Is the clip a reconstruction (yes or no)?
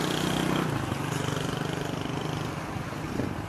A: no